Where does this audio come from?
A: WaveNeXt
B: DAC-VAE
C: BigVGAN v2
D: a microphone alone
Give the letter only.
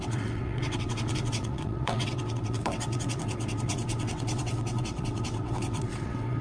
A